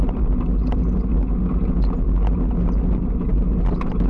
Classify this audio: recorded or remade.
recorded